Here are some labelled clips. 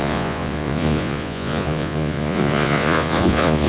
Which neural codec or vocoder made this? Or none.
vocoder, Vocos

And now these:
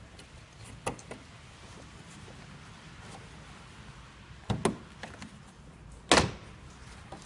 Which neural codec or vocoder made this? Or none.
none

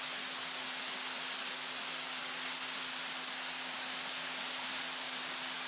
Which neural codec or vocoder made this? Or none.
none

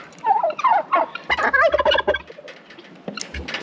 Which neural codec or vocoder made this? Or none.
none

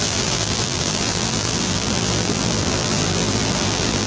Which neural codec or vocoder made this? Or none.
vocoder, BigVGAN v2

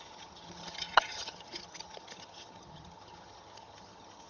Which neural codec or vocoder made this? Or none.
vocoder, HiFi-GAN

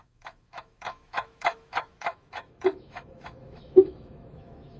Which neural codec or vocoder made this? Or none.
autoencoder, DAC-VAE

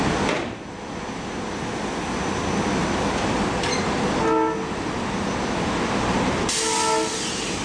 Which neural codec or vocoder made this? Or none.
none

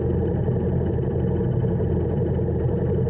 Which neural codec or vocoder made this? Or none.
none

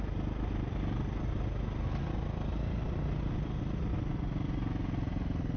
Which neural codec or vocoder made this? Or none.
none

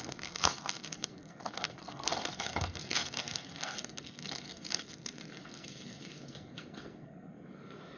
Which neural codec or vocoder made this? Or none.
codec, SNAC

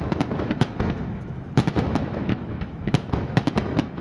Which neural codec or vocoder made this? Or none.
autoencoder, DAC-VAE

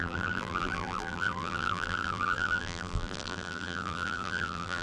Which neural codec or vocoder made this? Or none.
vocoder, BigVGAN v2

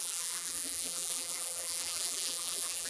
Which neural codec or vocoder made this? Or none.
vocoder, BigVGAN v2